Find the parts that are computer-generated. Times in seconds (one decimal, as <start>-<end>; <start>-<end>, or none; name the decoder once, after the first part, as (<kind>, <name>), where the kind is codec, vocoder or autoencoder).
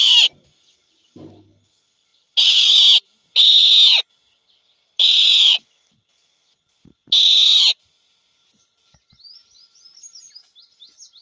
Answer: none